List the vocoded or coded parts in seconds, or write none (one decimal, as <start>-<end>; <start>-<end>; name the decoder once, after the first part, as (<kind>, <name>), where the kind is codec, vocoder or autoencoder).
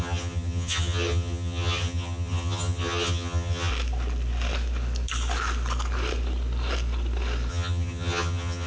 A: 0.0-3.7 (vocoder, HiFi-GAN); 7.5-8.7